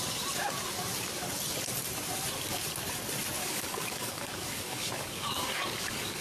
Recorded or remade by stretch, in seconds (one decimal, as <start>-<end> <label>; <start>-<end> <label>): 0.0-3.4 recorded; 3.4-6.2 remade